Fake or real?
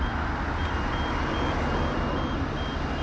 real